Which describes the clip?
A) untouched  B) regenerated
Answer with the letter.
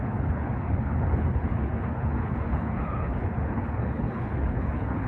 B